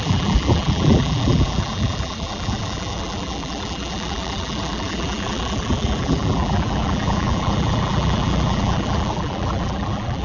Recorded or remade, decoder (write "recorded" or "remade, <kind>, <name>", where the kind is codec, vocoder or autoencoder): remade, vocoder, BigVGAN v2